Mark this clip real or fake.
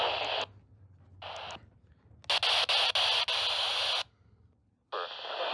real